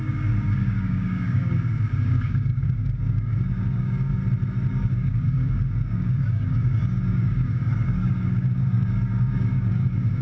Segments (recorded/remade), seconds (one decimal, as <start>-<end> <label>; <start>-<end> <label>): 0.0-4.2 remade; 4.2-4.7 recorded; 4.7-10.2 remade